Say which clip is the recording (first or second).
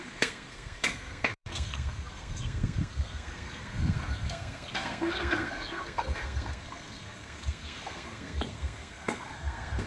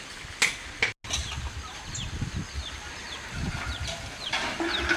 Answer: second